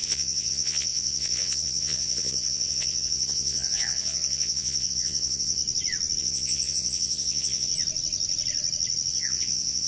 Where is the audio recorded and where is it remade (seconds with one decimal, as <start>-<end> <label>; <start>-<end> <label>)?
0.0-5.6 remade; 5.6-6.2 recorded; 6.2-7.7 remade; 7.7-9.1 recorded; 9.1-9.9 remade